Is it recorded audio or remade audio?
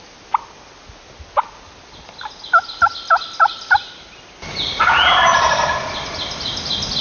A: recorded